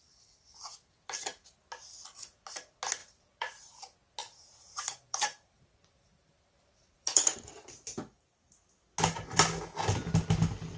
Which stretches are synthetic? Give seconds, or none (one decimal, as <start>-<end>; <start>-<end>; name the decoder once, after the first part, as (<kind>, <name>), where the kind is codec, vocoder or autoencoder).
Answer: 3.0-3.8 (vocoder, BigVGAN v2); 4.2-8.0